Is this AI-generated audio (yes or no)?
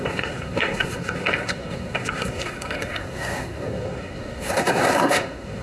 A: yes